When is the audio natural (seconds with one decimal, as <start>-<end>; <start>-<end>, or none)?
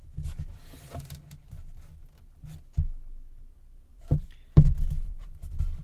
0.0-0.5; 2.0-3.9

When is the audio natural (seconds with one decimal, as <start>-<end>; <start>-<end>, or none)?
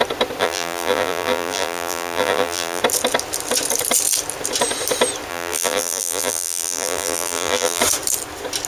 0.0-0.4; 2.8-5.3; 7.8-8.7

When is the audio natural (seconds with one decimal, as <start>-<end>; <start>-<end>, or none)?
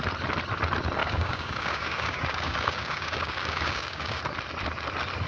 0.0-1.0; 4.2-5.3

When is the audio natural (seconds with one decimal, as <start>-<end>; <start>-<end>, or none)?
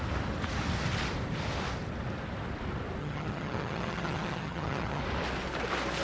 0.0-3.0; 5.0-6.0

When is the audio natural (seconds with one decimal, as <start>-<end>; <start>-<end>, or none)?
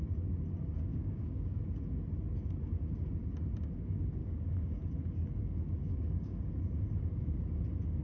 0.0-0.9; 1.6-4.2; 4.8-5.8; 6.5-8.0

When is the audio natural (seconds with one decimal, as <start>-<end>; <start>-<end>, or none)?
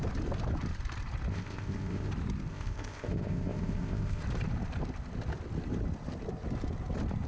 0.0-1.3; 2.1-2.5; 4.2-7.3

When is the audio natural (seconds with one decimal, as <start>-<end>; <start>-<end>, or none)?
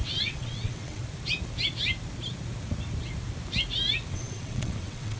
1.0-4.1